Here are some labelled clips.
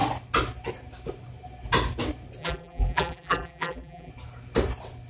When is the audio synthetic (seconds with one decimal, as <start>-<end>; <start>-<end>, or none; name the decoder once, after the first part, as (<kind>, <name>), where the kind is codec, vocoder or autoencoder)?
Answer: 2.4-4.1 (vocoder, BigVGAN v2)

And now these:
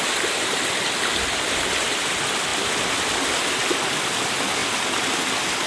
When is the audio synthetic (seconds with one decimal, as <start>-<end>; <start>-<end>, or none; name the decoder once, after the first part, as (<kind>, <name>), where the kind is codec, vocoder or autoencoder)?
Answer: none

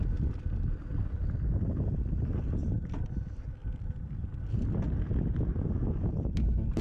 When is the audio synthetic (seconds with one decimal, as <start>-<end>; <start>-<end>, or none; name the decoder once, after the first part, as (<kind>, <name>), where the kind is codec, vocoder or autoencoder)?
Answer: 2.6-3.2 (vocoder, BigVGAN v2); 3.6-5.7

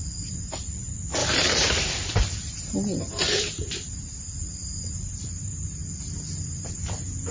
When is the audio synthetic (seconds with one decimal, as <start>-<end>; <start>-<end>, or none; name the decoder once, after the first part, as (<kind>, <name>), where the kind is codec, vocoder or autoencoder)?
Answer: 1.2-3.9 (vocoder, BigVGAN v2); 4.6-6.6